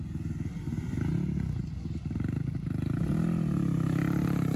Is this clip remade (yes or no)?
no